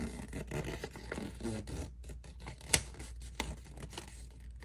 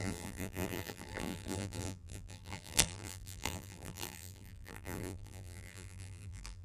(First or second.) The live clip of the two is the first